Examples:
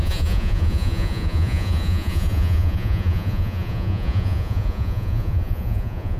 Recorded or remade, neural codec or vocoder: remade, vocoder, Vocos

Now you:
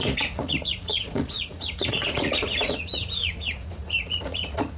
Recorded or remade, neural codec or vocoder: remade, vocoder, Vocos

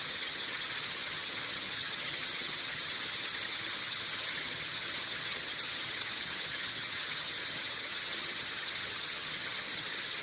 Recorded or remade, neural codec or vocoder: remade, vocoder, HiFi-GAN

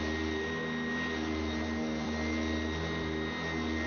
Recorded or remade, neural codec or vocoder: recorded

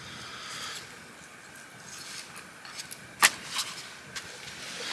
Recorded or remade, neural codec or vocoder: recorded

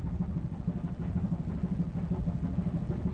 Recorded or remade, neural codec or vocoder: recorded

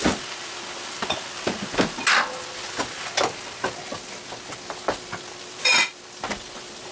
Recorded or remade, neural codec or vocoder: recorded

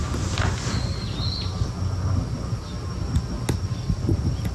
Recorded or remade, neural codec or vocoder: recorded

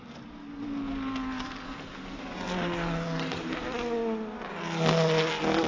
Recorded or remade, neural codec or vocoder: recorded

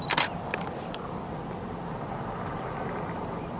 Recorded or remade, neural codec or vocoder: recorded